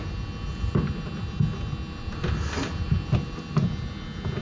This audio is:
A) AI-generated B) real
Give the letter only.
B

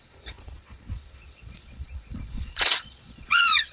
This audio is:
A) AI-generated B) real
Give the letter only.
A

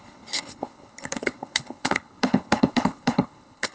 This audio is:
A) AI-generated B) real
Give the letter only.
A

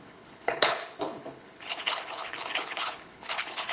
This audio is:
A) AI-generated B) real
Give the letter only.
A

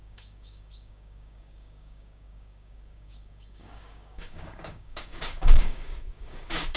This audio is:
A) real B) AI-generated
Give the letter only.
B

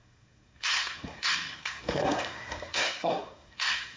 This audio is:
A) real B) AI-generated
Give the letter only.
B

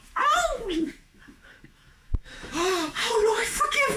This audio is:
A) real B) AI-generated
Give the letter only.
B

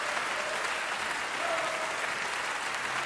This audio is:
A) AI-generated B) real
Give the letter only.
B